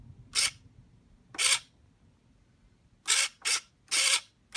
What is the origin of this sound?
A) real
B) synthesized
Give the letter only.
A